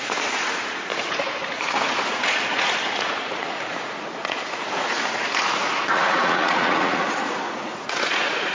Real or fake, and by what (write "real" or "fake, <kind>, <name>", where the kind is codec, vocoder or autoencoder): fake, vocoder, Vocos